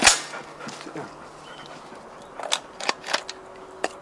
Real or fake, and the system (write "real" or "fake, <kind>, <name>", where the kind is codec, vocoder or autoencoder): real